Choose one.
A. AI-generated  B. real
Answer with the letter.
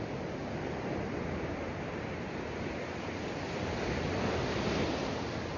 B